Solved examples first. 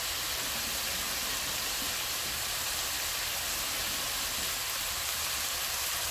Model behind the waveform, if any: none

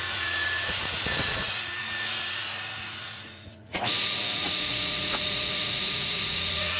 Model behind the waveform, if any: vocoder, Vocos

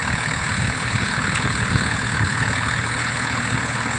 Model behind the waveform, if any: codec, HILCodec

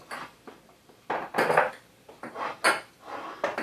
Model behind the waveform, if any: none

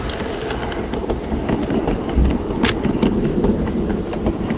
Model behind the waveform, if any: none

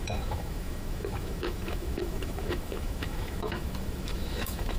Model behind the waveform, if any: autoencoder, DAC-VAE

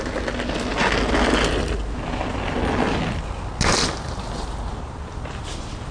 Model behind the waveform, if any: none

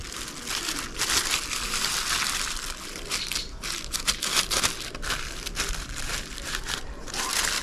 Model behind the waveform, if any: vocoder, BigVGAN v2